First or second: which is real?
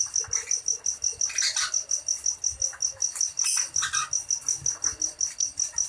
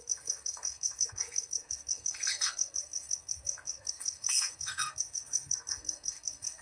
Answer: first